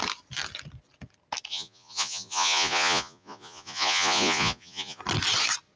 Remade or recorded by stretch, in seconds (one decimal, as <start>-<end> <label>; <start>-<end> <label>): 0.0-1.5 recorded; 1.5-5.0 remade; 5.0-5.8 recorded

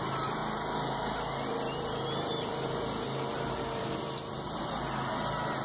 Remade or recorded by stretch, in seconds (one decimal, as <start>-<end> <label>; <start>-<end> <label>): 0.0-5.6 recorded